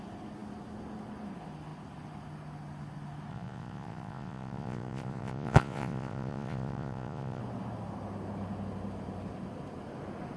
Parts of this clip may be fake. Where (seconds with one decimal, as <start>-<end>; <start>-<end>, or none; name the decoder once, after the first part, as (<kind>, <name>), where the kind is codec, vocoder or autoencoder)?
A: 3.3-7.4 (vocoder, Vocos)